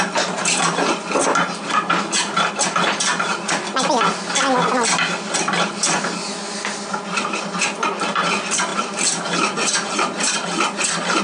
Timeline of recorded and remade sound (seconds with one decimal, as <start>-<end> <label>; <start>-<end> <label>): 0.0-8.7 recorded; 8.7-11.2 remade